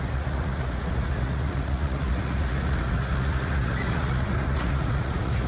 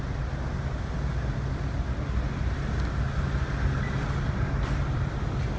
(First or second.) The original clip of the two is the second